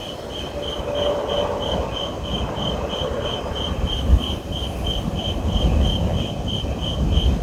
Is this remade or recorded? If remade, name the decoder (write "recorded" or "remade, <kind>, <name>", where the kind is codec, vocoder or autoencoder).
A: recorded